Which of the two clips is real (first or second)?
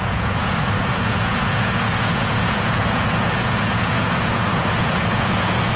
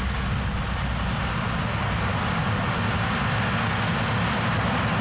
second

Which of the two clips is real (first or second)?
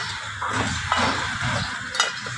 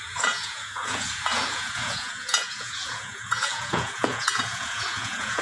first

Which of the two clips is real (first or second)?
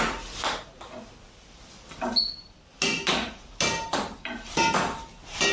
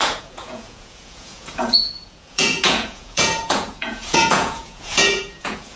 first